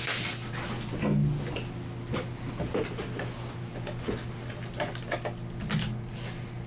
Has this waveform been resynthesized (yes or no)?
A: no